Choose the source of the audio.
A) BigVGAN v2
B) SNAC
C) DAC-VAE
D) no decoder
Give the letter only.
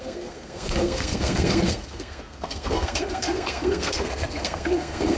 B